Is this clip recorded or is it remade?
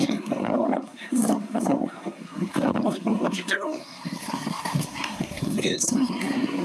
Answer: remade